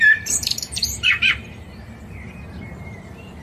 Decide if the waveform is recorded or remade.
remade